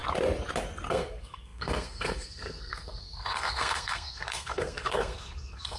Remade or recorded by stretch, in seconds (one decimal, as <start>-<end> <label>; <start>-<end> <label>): 0.0-0.9 recorded; 0.9-5.8 remade